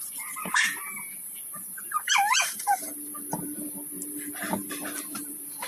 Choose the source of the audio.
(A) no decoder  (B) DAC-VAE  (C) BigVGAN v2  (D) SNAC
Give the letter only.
C